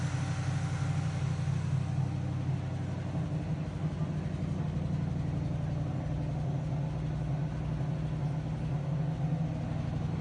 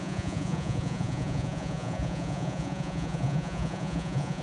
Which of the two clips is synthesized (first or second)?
second